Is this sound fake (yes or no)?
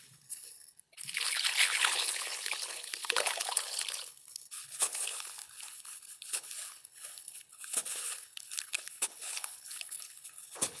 yes